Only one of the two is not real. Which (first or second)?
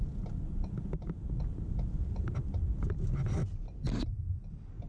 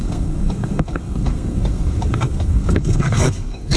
second